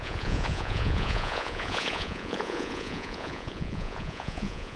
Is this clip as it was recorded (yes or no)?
no